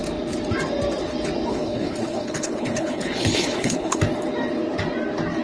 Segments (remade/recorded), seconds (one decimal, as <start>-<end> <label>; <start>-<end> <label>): 0.0-1.5 recorded; 1.5-4.0 remade; 4.0-5.4 recorded